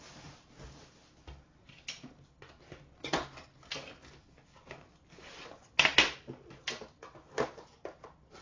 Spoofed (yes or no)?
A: no